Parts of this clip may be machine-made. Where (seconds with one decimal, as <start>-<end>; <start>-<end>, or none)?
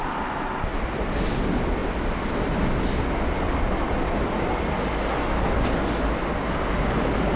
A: 0.7-1.3